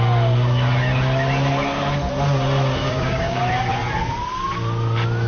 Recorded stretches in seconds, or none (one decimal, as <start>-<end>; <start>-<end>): 0.0-2.8; 3.4-5.3